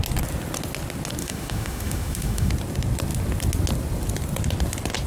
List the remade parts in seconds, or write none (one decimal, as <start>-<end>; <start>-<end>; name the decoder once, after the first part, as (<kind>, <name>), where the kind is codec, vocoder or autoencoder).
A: 1.2-2.5 (autoencoder, DAC-VAE)